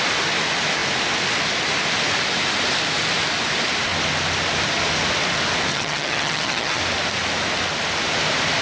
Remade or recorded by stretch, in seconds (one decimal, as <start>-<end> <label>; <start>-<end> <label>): 0.0-5.7 recorded; 5.7-6.8 remade; 6.8-8.6 recorded